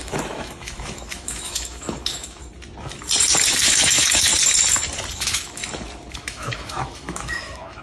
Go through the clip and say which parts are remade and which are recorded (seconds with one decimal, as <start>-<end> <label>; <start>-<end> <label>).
0.0-2.4 remade; 2.4-3.6 recorded; 3.6-4.3 remade; 4.3-5.1 recorded; 5.1-5.6 remade; 5.6-6.1 recorded; 6.1-7.8 remade